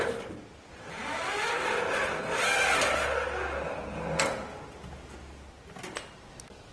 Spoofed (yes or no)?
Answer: no